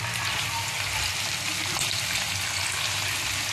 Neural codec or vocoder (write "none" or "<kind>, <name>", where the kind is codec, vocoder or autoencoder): none